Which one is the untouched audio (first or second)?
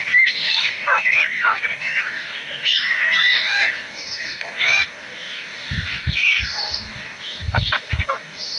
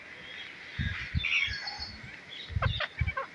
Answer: second